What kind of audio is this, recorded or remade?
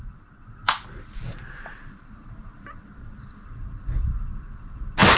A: recorded